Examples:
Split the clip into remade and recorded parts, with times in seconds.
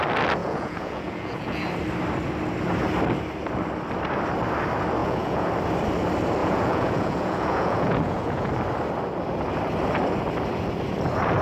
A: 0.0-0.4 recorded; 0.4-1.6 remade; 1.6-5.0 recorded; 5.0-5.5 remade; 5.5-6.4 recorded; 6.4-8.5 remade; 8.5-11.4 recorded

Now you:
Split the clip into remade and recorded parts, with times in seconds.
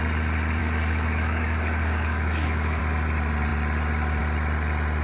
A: 0.0-0.6 recorded; 0.6-2.8 remade; 2.8-5.0 recorded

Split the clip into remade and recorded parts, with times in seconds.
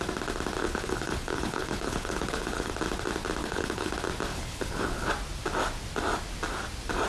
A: 0.0-0.6 recorded; 0.6-2.7 remade; 2.7-3.4 recorded; 3.4-3.9 remade; 3.9-4.3 recorded; 4.3-5.1 remade; 5.1-7.1 recorded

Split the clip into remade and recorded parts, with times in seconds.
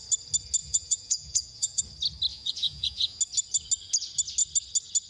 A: 0.0-0.6 recorded; 0.6-1.8 remade; 1.8-2.3 recorded; 2.3-3.2 remade; 3.2-5.1 recorded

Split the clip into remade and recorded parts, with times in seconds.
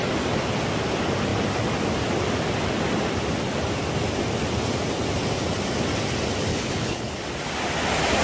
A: 0.0-6.5 recorded; 6.5-7.2 remade; 7.2-8.2 recorded